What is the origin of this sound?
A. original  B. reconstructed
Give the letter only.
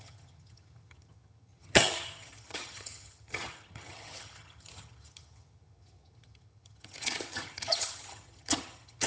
B